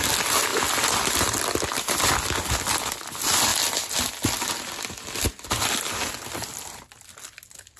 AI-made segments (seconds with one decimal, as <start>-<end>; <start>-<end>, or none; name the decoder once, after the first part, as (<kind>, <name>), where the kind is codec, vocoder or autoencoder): none